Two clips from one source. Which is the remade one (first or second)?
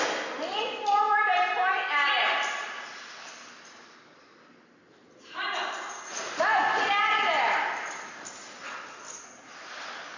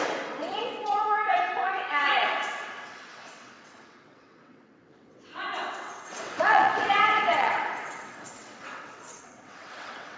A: second